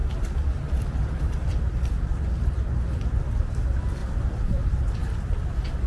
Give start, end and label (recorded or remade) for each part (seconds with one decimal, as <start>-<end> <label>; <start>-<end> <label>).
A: 0.0-3.5 remade; 3.5-4.0 recorded; 4.0-4.6 remade; 4.6-5.0 recorded; 5.0-5.9 remade